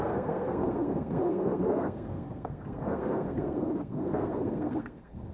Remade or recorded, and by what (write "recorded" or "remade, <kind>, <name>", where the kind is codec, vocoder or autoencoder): remade, codec, SNAC